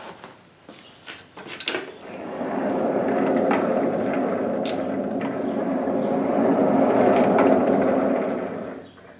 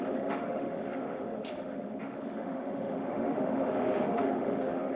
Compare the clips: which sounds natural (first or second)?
first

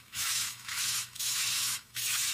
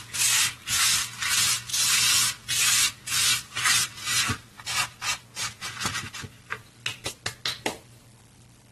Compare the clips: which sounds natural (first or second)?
second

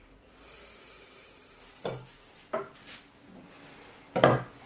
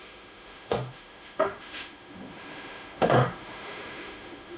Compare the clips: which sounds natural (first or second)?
first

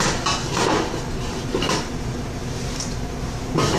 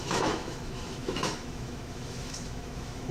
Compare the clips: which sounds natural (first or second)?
first